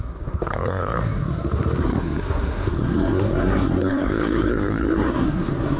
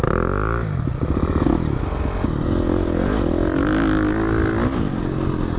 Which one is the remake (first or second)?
first